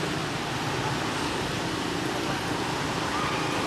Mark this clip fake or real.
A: real